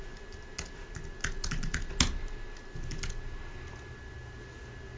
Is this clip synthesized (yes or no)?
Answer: no